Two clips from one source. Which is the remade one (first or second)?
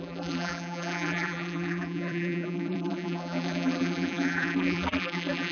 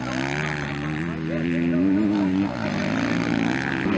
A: first